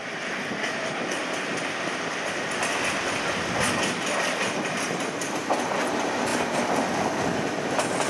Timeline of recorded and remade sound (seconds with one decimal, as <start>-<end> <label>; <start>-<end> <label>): 0.0-8.1 recorded